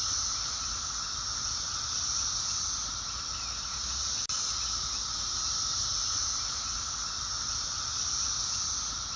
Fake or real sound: real